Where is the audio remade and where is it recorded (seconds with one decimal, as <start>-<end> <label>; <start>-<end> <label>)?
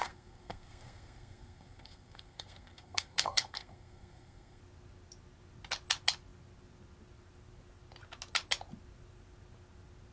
0.0-4.6 remade; 4.6-10.1 recorded